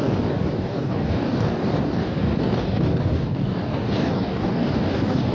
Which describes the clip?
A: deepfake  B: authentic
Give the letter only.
A